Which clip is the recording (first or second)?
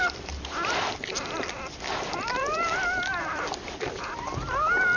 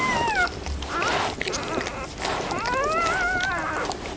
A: second